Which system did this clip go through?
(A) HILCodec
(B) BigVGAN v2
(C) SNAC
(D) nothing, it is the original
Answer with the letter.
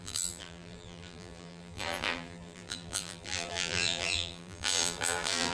B